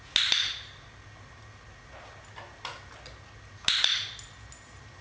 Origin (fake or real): real